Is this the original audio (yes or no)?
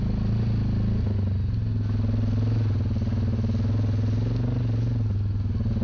yes